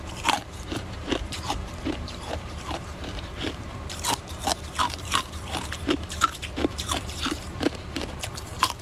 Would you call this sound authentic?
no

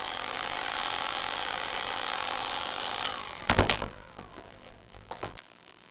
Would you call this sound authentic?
no